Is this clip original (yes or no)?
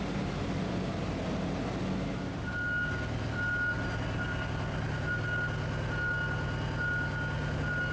yes